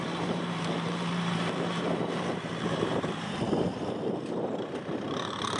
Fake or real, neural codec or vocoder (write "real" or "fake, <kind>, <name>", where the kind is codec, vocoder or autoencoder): fake, vocoder, BigVGAN v2